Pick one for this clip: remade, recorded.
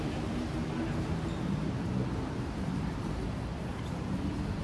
remade